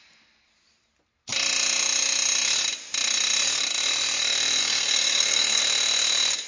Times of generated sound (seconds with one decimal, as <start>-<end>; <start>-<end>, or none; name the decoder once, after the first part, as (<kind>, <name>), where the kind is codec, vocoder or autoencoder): 4.6-5.6 (codec, SNAC)

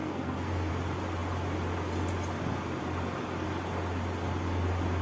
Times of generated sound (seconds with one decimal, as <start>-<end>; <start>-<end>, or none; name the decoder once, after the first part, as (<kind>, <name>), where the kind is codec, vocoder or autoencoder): 0.0-0.7 (codec, SNAC)

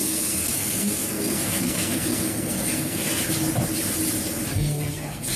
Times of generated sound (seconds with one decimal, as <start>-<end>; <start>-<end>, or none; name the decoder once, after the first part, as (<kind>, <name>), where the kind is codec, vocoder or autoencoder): 0.0-3.2 (codec, SNAC); 4.5-5.4

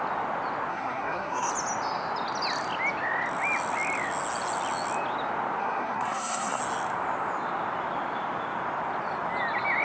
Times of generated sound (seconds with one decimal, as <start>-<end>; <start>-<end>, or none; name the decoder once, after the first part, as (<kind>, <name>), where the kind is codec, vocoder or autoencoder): 0.7-1.5 (codec, SNAC); 5.6-6.6

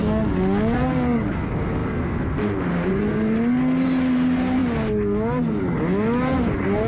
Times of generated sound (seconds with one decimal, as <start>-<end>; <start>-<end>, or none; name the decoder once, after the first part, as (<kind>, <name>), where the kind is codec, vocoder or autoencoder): 1.8-3.0 (vocoder, BigVGAN v2)

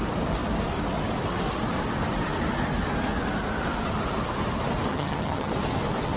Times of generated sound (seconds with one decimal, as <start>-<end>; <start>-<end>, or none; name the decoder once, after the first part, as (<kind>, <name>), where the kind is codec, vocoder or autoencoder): 4.9-5.5 (vocoder, HiFi-GAN)

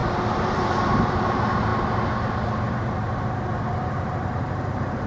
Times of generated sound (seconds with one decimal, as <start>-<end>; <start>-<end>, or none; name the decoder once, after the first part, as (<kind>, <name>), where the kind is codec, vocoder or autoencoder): 0.8-1.7 (vocoder, BigVGAN v2); 2.7-5.1